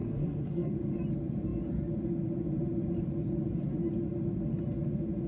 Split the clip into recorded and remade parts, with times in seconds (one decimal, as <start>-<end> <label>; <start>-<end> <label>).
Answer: 0.0-0.7 remade; 0.7-5.3 recorded